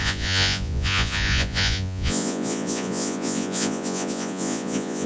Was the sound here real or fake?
fake